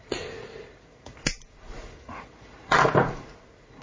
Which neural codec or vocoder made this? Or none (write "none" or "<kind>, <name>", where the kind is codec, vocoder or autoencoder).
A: vocoder, Vocos